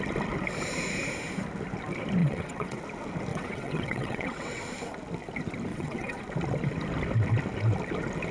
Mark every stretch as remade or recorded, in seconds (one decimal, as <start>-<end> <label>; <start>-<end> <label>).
0.0-2.2 recorded; 2.2-2.8 remade; 2.8-3.3 recorded; 3.3-4.6 remade; 4.6-5.7 recorded; 5.7-6.2 remade; 6.2-8.3 recorded